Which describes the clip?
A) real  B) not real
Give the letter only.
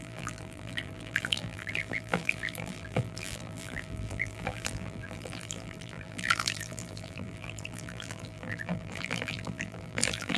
B